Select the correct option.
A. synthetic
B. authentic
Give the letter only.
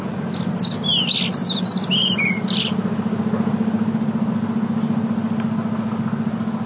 B